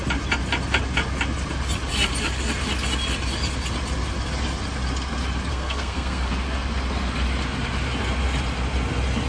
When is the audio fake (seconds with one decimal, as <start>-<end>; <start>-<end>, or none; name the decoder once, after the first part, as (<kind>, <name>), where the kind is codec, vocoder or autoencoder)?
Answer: 5.5-6.3 (codec, SNAC)